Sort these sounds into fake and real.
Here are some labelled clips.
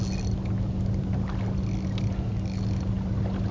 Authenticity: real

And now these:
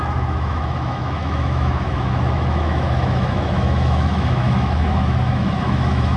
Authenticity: fake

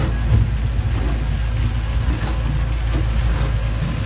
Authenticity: real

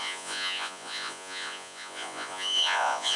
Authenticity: fake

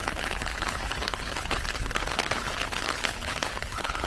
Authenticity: fake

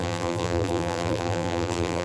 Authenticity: fake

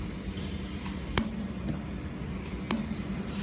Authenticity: real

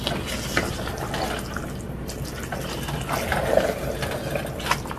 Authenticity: real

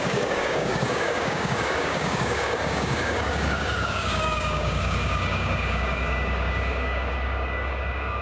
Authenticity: fake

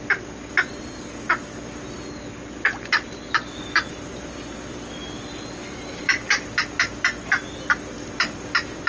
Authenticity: real